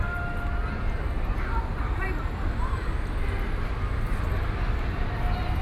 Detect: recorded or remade recorded